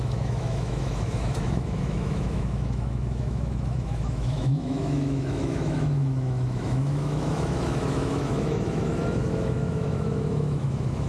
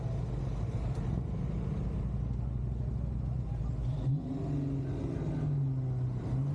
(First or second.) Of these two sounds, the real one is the second